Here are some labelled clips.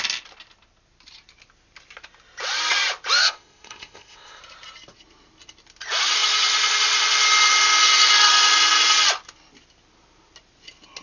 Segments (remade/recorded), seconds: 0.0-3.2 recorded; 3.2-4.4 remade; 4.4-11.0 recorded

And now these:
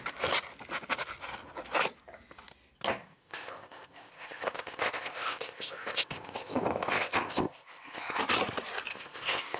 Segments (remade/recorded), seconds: 0.0-3.0 recorded; 3.0-8.2 remade; 8.2-8.9 recorded; 8.9-9.6 remade

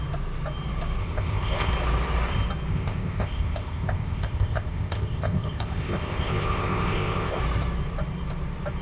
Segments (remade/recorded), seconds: 0.0-1.0 recorded; 1.0-1.7 remade; 1.7-2.7 recorded; 2.7-7.4 remade; 7.4-8.8 recorded

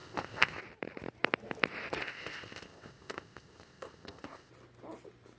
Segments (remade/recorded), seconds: 0.0-0.6 remade; 0.6-2.0 recorded; 2.0-4.5 remade; 4.5-5.4 recorded

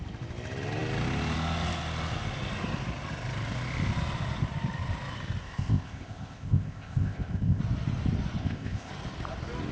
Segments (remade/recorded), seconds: 0.0-5.4 recorded; 5.4-7.6 remade; 7.6-8.4 recorded; 8.4-8.9 remade; 8.9-9.7 recorded